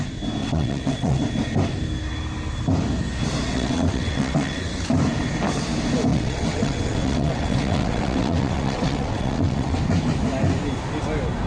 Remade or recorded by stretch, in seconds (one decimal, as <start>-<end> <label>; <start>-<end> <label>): 0.0-0.4 recorded; 0.4-1.2 remade; 1.2-3.5 recorded; 3.5-4.8 remade; 4.8-6.1 recorded; 6.1-9.8 remade; 9.8-11.5 recorded